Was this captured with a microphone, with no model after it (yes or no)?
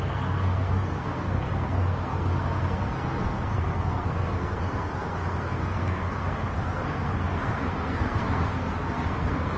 no